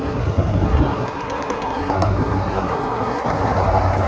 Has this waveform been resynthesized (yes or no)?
yes